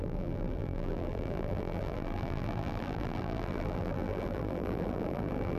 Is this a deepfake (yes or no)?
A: yes